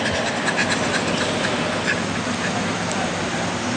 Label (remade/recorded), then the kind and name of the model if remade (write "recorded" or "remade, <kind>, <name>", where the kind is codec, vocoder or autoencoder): recorded